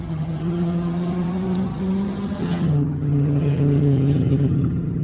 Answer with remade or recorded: remade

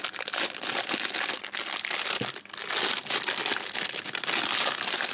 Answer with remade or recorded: recorded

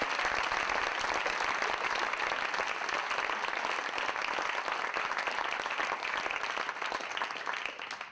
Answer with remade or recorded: recorded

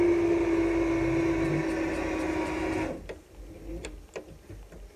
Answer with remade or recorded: recorded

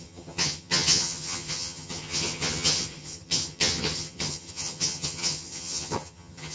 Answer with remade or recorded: remade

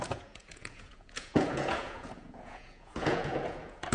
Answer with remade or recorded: remade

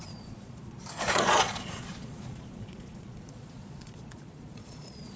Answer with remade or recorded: remade